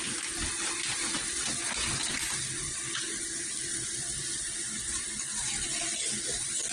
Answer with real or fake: real